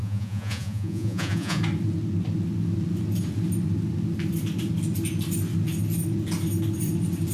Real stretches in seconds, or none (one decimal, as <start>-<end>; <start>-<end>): 1.6-7.3